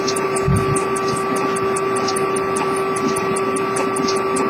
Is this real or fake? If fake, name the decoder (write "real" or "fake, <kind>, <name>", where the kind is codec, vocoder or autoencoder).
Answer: real